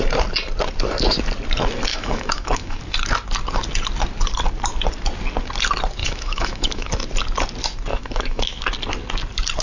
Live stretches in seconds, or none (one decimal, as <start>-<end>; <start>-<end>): 0.0-1.9; 2.8-6.0; 6.9-7.9; 8.6-9.6